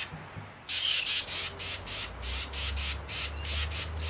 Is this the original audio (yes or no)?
yes